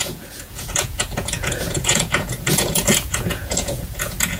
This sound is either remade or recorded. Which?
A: remade